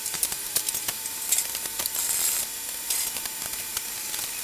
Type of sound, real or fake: fake